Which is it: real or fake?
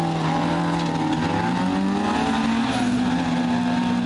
real